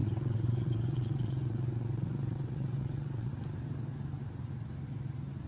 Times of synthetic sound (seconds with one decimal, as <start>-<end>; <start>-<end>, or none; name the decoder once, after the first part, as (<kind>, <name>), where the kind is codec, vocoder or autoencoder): 0.0-3.3 (vocoder, WaveNeXt)